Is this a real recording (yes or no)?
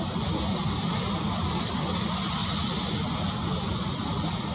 yes